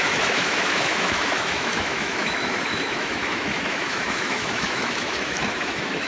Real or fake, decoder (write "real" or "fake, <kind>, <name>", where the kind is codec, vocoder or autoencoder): fake, autoencoder, DAC-VAE